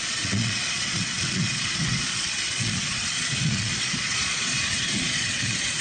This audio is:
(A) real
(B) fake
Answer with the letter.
B